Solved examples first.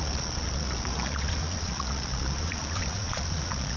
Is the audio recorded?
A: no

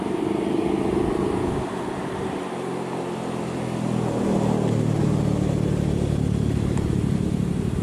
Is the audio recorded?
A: yes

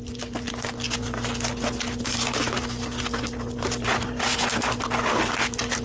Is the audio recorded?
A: yes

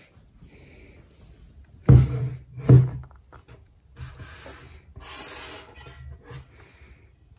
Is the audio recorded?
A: yes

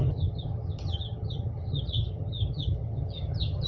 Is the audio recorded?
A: no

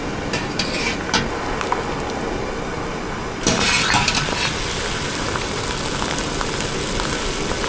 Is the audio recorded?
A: yes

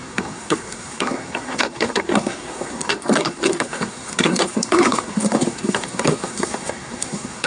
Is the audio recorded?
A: no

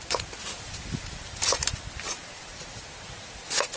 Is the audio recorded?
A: yes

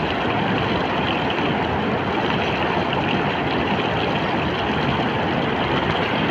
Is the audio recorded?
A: yes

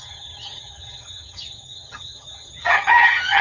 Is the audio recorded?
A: no